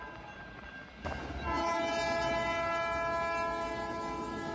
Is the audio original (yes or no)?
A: yes